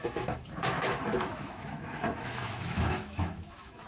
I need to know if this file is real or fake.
fake